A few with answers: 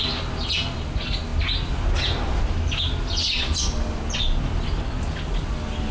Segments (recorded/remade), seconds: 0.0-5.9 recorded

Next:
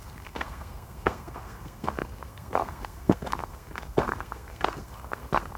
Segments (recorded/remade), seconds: 0.0-5.6 remade

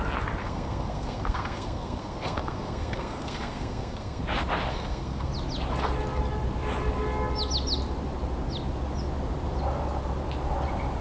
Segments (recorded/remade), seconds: 0.0-0.4 recorded; 0.4-4.2 remade; 4.2-4.7 recorded; 4.7-5.3 remade; 5.3-11.0 recorded

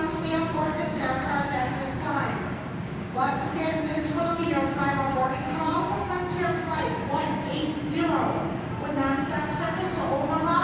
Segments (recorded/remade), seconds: 0.0-7.6 remade; 7.6-10.6 recorded